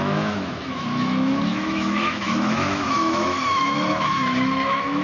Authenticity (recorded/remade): remade